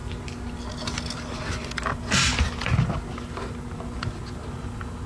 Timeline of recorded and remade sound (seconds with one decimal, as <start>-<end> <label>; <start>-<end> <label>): 0.0-5.1 recorded